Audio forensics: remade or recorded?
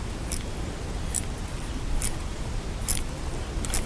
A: recorded